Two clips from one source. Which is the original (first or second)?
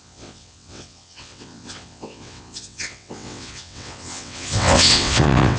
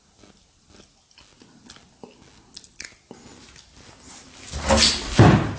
second